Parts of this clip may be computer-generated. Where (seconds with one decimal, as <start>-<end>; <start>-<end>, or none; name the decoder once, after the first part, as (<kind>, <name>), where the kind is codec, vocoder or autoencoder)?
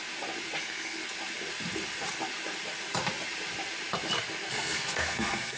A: 0.6-1.0 (codec, SNAC); 4.4-5.6